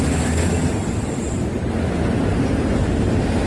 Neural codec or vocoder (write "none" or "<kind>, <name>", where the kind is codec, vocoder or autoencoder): none